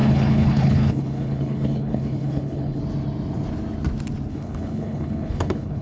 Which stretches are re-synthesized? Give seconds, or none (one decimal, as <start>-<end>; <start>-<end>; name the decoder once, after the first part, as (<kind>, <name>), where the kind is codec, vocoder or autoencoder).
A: 0.0-2.8 (codec, HILCodec); 4.3-5.8